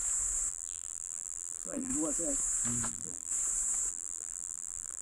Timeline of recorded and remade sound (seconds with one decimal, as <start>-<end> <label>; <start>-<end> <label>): 0.0-0.5 recorded; 0.5-1.9 remade; 1.9-2.9 recorded; 2.9-3.3 remade; 3.3-3.9 recorded; 3.9-5.0 remade